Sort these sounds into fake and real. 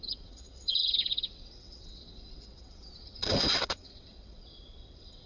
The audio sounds fake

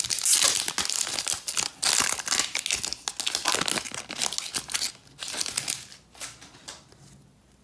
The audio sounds real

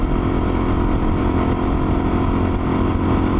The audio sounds real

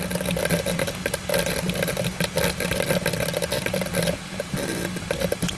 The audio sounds real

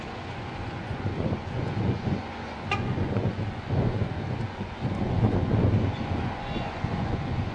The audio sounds fake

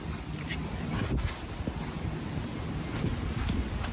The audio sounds real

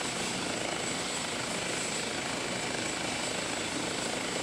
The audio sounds real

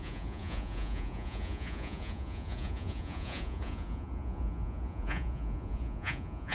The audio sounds fake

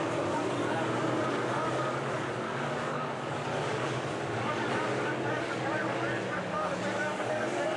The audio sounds fake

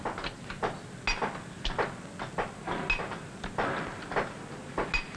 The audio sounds real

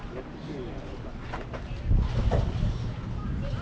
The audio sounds real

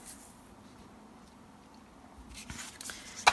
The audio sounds real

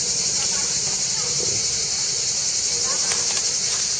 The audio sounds fake